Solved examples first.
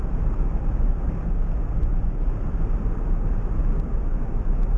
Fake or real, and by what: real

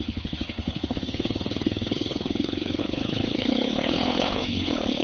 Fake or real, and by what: fake, codec, HILCodec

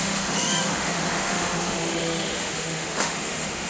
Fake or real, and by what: fake, autoencoder, DAC-VAE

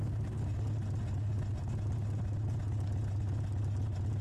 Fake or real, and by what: real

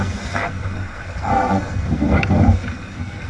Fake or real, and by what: fake, codec, SNAC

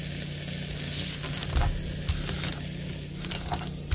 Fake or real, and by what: real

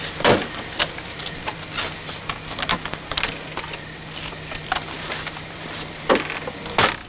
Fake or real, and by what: fake, vocoder, BigVGAN v2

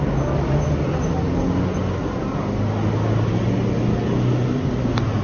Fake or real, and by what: real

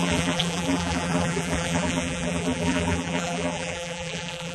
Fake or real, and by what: fake, vocoder, BigVGAN v2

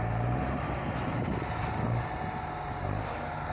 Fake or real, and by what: real